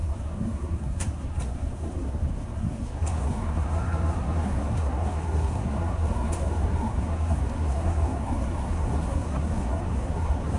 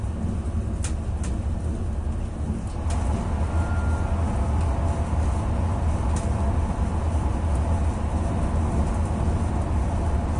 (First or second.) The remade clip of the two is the first